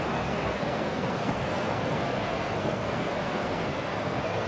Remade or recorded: remade